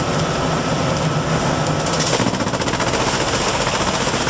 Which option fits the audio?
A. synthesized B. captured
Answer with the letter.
B